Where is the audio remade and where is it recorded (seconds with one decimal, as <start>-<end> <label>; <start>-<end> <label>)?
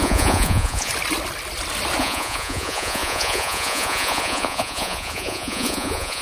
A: 0.0-0.9 remade; 0.9-2.0 recorded; 2.0-6.2 remade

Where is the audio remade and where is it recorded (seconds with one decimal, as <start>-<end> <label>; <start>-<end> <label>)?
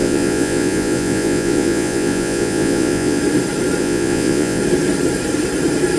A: 0.0-3.2 remade; 3.2-3.8 recorded; 3.8-4.6 remade; 4.6-6.0 recorded